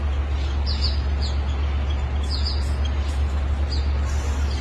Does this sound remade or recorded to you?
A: recorded